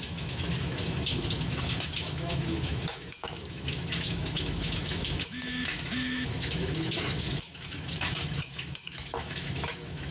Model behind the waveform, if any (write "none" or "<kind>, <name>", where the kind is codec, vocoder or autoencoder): autoencoder, DAC-VAE